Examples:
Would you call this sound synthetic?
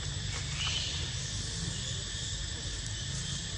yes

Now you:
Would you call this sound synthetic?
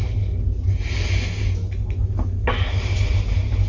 no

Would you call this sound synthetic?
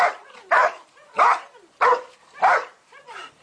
yes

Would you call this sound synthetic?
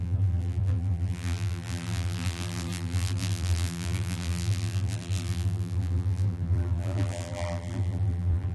yes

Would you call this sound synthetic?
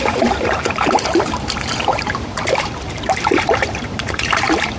yes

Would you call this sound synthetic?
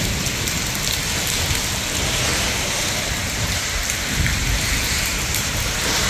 yes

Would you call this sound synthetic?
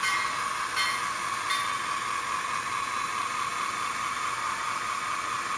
no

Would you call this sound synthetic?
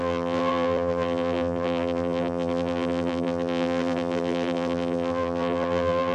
yes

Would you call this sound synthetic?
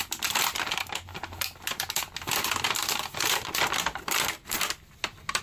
no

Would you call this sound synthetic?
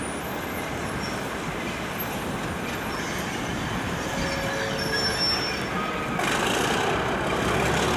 no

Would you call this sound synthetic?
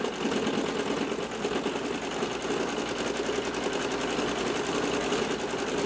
no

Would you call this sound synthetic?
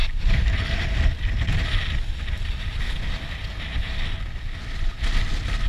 no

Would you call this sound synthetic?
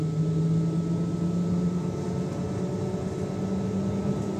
no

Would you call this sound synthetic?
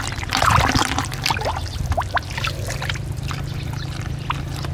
no